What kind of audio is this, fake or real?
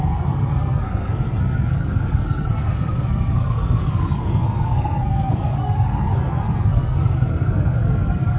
fake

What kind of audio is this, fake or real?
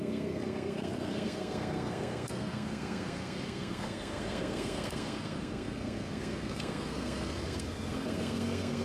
fake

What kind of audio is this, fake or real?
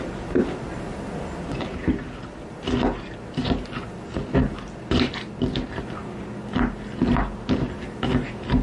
real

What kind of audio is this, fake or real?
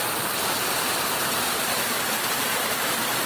real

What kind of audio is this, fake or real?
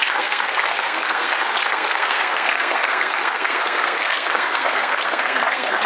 fake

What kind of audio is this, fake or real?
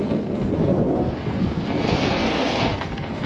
fake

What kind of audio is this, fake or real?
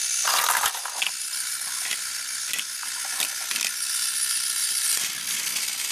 real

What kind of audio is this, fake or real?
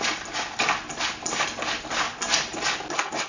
real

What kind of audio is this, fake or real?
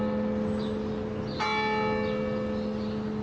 real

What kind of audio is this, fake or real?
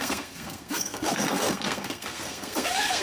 fake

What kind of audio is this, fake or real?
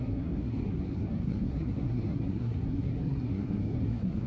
fake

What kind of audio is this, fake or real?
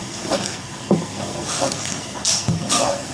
fake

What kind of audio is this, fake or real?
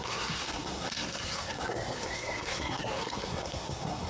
fake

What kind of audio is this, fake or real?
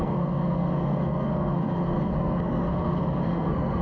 fake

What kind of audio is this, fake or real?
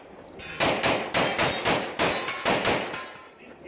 real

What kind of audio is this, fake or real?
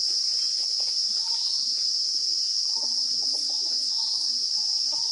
real